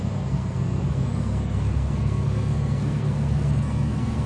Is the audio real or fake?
fake